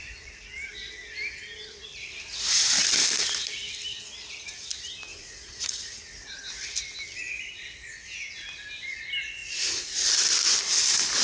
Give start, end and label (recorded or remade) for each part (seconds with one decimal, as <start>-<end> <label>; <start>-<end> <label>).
0.0-5.1 recorded; 5.1-6.4 remade; 6.4-11.2 recorded